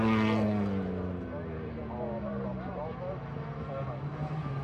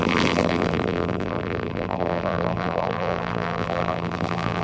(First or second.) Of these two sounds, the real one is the first